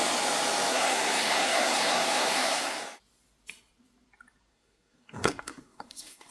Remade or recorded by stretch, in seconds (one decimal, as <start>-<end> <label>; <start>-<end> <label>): 0.0-0.7 recorded; 0.7-2.8 remade; 2.8-4.5 recorded; 4.5-6.3 remade